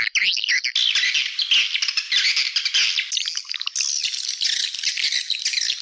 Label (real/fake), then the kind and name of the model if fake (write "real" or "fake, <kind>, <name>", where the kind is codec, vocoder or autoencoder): real